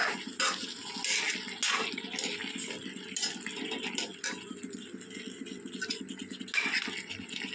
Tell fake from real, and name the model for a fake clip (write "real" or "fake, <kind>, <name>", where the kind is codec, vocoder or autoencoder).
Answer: real